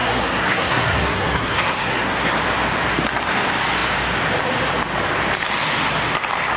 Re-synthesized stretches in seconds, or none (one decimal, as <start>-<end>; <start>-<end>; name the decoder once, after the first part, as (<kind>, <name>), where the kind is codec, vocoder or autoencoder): 0.0-2.3 (codec, SNAC)